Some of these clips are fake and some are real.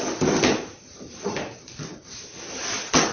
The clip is real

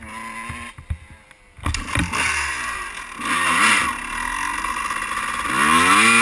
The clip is real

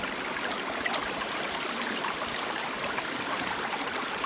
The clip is real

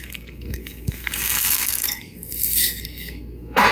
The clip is fake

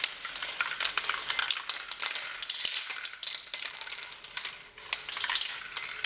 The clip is real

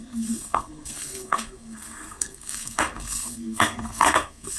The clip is fake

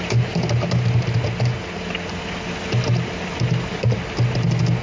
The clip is real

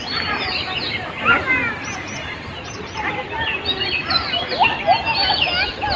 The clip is real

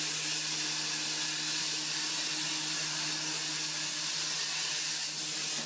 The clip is real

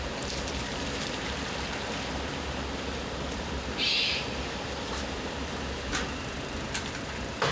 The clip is fake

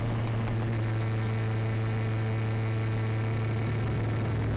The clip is real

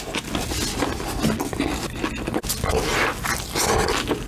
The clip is real